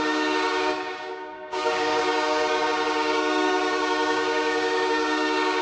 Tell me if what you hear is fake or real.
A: fake